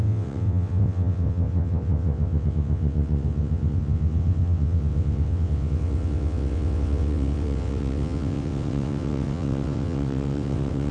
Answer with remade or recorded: remade